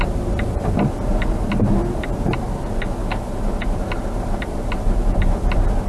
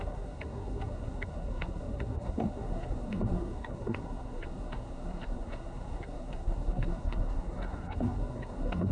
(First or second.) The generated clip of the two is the second